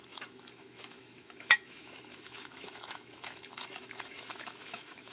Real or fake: fake